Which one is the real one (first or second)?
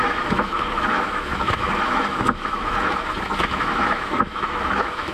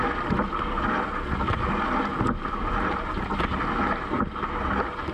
second